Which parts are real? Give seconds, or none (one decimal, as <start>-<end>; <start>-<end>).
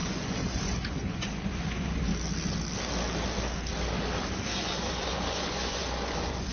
2.1-4.6